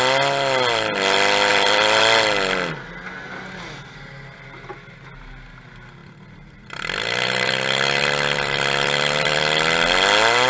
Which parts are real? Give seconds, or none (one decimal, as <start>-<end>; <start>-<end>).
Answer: 0.0-1.5; 2.0-6.0; 9.4-10.5